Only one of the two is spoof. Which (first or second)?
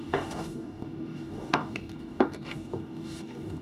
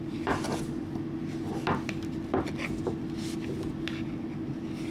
first